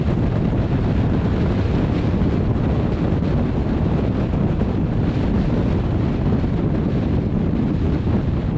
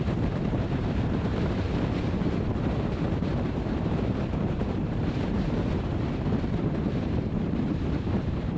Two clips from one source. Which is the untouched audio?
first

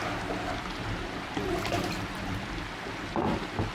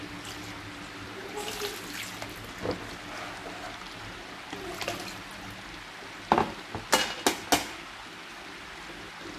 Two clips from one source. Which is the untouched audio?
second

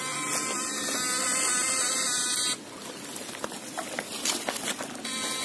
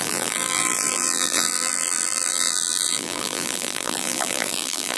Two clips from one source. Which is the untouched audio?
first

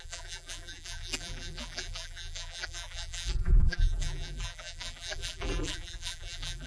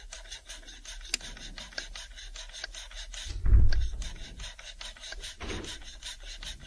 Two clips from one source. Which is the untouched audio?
second